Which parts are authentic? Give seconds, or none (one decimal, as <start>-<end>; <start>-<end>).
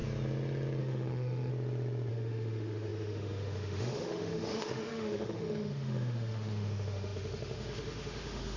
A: 0.0-0.8; 1.5-2.1